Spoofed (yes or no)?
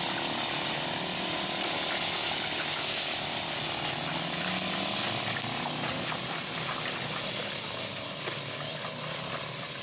no